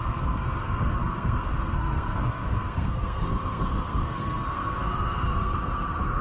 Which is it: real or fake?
fake